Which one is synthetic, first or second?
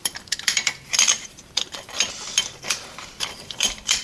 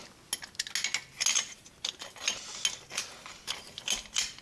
first